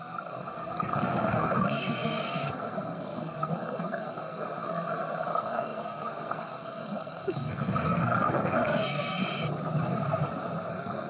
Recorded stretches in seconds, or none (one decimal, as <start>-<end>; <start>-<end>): 9.2-10.7